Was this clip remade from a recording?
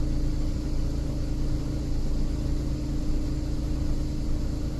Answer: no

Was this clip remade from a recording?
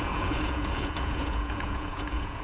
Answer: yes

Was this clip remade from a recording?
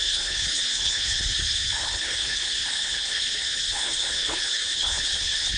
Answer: yes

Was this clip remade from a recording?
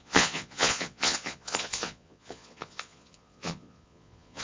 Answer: yes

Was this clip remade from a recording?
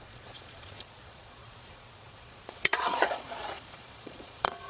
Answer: yes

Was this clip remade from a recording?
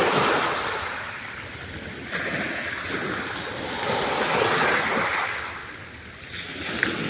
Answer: no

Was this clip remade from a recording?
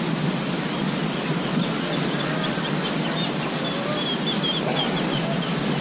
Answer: no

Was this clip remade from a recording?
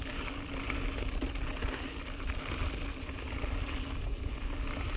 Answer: no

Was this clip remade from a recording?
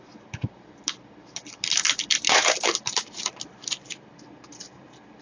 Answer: no